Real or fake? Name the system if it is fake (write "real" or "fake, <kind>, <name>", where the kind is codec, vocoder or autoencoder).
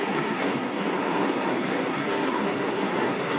fake, codec, SNAC